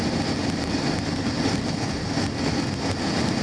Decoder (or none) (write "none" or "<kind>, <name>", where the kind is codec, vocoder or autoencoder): none